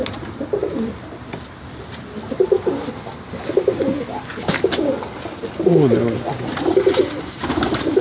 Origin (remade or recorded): recorded